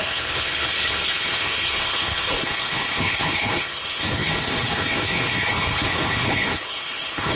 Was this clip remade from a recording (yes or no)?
yes